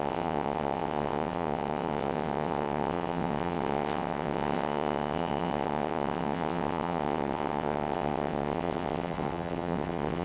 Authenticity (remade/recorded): remade